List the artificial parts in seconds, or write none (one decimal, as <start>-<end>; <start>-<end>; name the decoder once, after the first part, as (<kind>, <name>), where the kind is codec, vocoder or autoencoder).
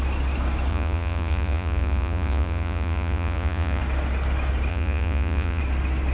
0.7-3.8 (vocoder, Vocos); 4.7-5.6